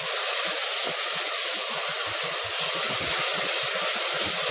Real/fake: real